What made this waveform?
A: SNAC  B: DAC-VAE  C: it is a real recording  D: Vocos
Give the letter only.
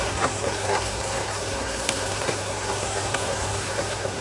A